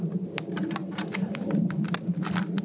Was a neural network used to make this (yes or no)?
no